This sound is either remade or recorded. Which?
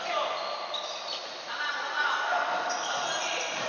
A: recorded